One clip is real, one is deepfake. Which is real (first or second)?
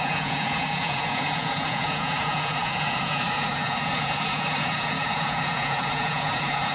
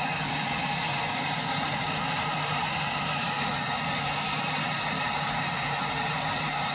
second